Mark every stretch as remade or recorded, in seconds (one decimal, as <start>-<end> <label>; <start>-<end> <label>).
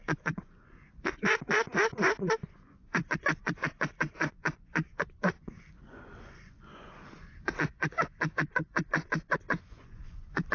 0.0-10.5 remade